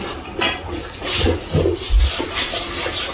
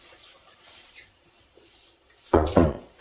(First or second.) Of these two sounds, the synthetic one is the second